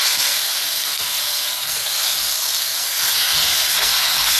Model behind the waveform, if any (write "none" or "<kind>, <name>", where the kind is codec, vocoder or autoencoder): codec, SNAC